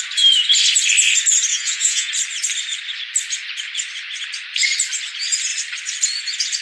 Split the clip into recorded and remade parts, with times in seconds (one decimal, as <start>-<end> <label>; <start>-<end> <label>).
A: 0.0-1.5 recorded; 1.5-2.1 remade; 2.1-6.6 recorded